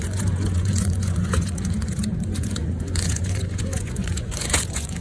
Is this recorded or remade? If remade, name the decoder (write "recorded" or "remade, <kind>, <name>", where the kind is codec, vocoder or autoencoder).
remade, vocoder, Vocos